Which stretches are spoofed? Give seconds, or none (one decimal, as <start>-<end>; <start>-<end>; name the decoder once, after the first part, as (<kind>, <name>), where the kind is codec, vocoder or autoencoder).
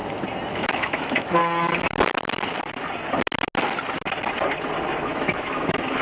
0.5-1.4 (autoencoder, DAC-VAE); 5.0-6.0